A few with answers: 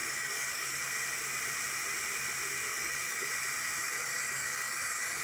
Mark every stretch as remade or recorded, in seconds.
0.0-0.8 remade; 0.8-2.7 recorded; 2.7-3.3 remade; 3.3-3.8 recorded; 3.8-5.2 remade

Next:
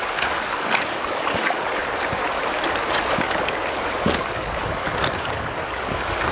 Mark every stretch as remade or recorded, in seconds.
0.0-1.8 remade; 1.8-3.1 recorded; 3.1-6.3 remade

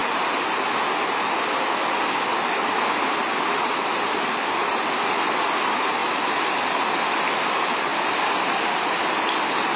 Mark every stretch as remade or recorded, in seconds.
0.0-9.8 recorded

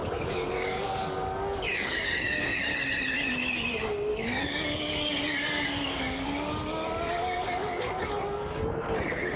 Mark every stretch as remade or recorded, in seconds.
0.0-2.6 remade; 2.6-4.1 recorded; 4.1-8.6 remade; 8.6-9.4 recorded

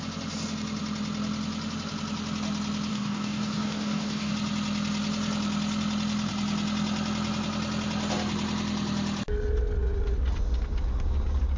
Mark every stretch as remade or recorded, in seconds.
0.0-2.9 recorded; 2.9-4.3 remade; 4.3-11.6 recorded

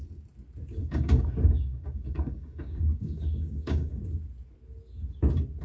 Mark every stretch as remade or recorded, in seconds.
0.0-0.8 recorded; 0.8-4.0 remade; 4.0-5.6 recorded

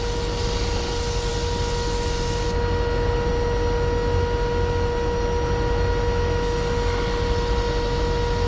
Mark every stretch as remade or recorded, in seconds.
0.0-8.5 recorded